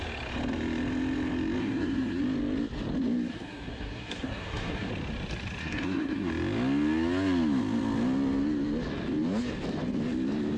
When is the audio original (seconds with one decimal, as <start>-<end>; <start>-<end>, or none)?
0.0-1.6; 2.2-3.3; 4.9-5.6; 6.3-10.6